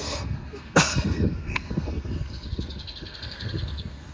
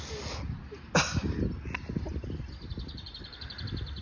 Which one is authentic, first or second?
second